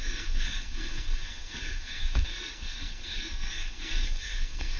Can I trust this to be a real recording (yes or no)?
no